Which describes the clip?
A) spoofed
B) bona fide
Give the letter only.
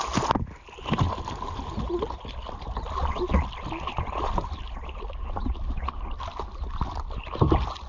B